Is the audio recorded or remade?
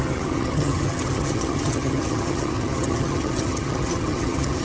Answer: remade